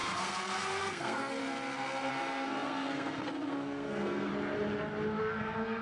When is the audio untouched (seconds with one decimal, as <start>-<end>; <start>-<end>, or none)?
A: 1.4-2.1; 4.3-5.2